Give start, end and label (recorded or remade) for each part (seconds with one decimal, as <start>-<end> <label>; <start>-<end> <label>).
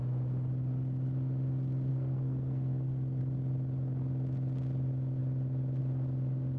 0.0-1.9 recorded; 1.9-3.2 remade; 3.2-6.6 recorded